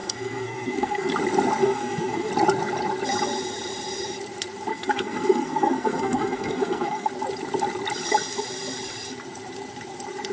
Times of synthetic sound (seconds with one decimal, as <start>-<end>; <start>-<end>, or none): 0.0-1.1; 1.6-2.3; 4.7-7.1

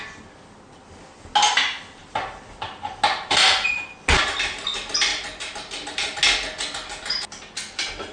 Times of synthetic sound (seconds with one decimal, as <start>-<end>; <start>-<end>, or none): 5.1-6.2

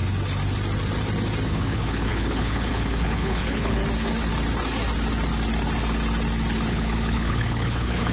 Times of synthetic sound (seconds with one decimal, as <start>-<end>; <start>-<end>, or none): 1.5-3.8; 6.7-8.1

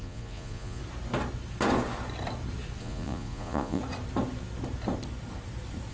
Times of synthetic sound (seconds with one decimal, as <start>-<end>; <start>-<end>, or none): 0.0-0.8; 2.8-3.8